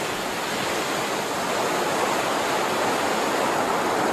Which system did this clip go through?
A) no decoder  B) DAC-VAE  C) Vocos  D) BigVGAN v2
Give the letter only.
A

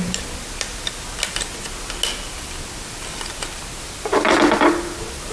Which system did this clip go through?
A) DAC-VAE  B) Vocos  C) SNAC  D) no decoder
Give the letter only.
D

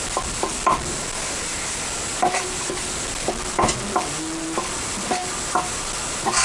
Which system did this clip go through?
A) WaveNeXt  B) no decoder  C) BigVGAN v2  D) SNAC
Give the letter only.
B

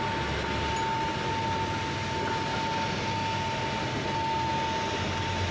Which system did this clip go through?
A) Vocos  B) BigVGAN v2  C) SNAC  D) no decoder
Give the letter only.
D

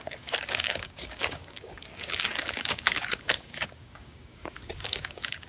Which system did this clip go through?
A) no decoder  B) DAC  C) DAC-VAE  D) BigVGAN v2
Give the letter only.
B